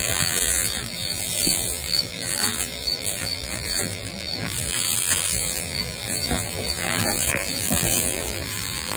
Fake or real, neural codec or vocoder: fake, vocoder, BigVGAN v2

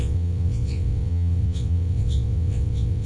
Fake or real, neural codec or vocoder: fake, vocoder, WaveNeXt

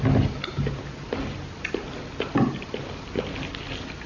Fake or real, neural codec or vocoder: real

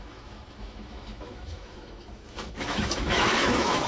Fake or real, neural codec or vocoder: fake, autoencoder, DAC-VAE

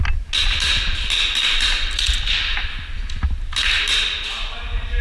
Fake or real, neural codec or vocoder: real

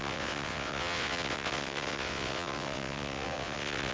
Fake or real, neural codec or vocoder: fake, vocoder, WaveNeXt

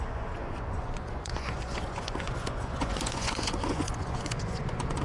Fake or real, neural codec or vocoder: fake, vocoder, Vocos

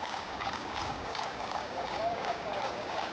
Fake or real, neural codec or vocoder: fake, codec, DAC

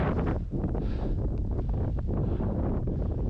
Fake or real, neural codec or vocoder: real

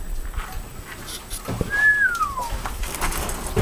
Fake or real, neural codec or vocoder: real